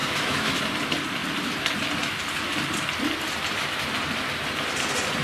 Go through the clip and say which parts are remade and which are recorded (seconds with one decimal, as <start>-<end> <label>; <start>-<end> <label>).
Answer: 0.0-0.6 remade; 0.6-5.2 recorded